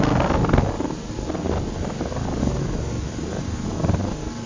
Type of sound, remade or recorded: recorded